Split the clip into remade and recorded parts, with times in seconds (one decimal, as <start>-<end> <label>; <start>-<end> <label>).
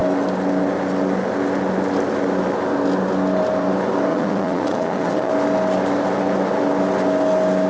0.0-4.1 recorded; 4.1-5.3 remade; 5.3-7.7 recorded